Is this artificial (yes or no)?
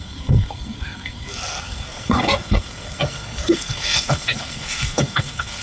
yes